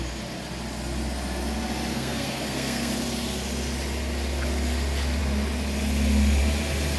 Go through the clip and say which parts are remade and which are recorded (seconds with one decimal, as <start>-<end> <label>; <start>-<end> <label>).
0.0-1.9 recorded; 1.9-2.9 remade; 2.9-7.0 recorded